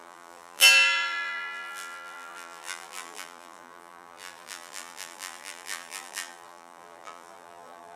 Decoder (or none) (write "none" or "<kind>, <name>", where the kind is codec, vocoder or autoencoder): vocoder, BigVGAN v2